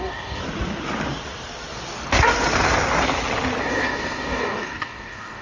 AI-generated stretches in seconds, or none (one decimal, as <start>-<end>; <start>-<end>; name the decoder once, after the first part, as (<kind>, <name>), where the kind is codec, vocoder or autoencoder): 0.0-0.4 (codec, DAC); 3.6-5.4